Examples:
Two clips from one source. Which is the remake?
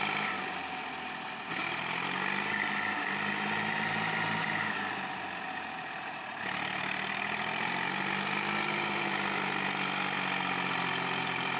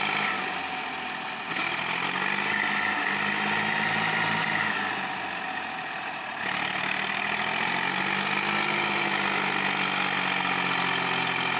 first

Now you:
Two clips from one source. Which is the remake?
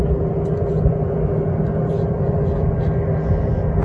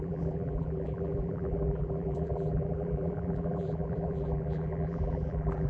second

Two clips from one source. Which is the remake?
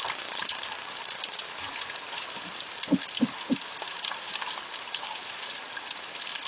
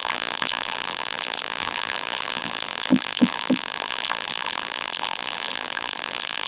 second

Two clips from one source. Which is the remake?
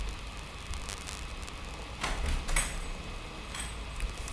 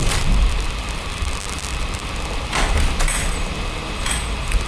second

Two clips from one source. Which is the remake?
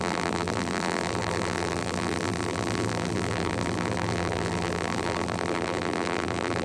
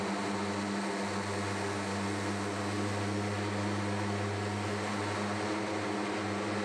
first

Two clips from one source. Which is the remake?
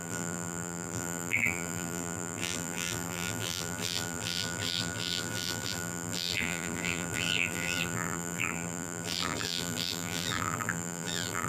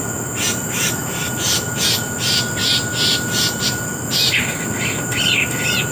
first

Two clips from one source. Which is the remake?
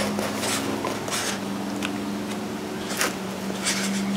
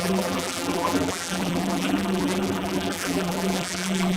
second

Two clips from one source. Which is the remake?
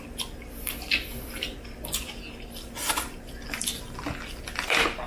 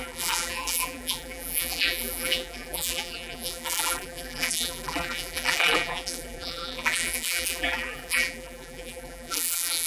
second